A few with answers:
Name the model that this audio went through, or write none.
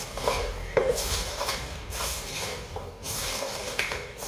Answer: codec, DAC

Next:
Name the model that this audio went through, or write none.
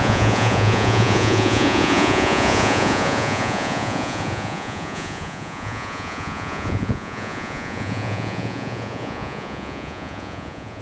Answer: vocoder, Vocos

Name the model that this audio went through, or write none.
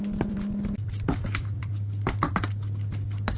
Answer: vocoder, BigVGAN v2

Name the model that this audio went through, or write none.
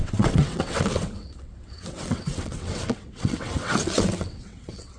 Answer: vocoder, WaveNeXt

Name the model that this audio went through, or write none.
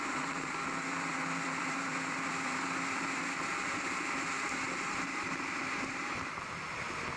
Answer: vocoder, BigVGAN v2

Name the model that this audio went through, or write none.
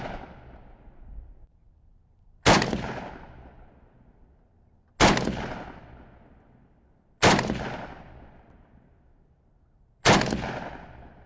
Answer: none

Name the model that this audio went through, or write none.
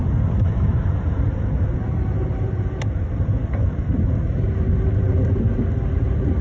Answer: none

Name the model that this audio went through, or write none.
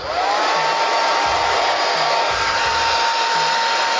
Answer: none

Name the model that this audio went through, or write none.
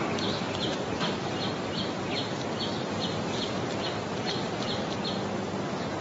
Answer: none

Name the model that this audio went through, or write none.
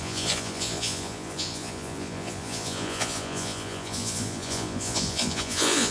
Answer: vocoder, Vocos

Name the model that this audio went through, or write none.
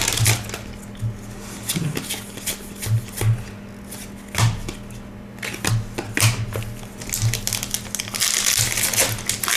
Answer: none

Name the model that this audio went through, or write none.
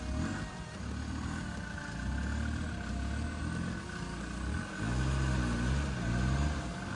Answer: none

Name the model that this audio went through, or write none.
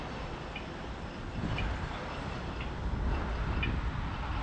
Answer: none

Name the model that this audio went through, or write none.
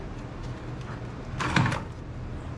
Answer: none